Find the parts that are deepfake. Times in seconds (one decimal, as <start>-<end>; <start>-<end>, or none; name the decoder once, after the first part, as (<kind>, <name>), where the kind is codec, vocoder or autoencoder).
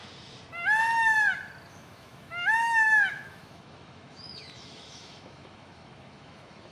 1.7-6.7 (autoencoder, DAC-VAE)